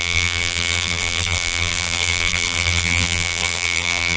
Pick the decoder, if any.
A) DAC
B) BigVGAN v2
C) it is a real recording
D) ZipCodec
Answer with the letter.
B